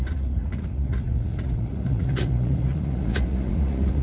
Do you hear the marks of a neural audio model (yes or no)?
yes